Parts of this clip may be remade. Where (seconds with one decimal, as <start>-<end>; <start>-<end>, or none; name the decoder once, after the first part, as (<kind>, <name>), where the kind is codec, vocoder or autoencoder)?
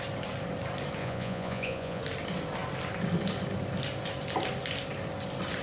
1.0-2.0 (vocoder, Vocos)